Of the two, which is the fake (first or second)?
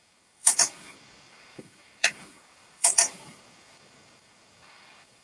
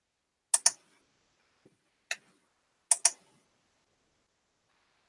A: first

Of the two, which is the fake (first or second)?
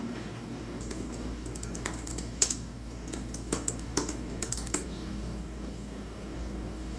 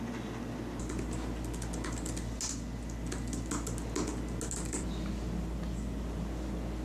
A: first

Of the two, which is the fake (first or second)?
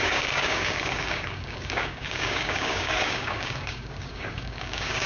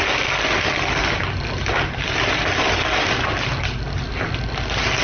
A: first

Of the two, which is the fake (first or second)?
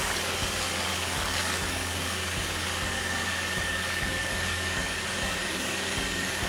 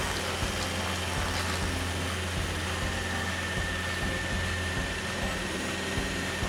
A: first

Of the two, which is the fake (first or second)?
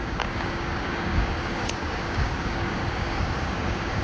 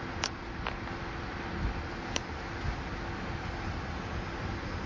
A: first